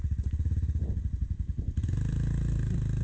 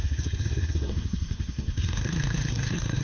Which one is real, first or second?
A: first